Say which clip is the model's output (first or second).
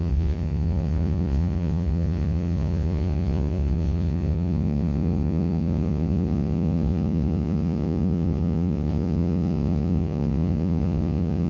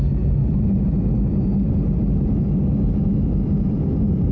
first